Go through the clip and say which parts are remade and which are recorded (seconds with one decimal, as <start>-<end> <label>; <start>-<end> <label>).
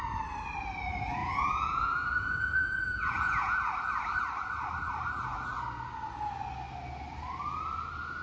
0.0-1.2 recorded; 1.2-3.6 remade; 3.6-8.2 recorded